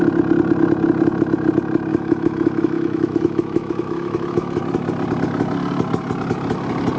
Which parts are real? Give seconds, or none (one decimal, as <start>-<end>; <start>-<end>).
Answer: 0.0-1.9; 4.6-7.0